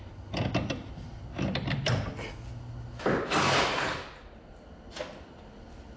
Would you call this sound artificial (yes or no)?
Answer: no